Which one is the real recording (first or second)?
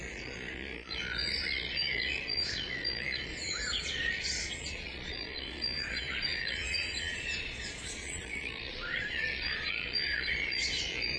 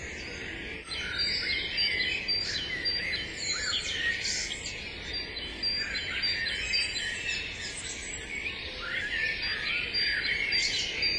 second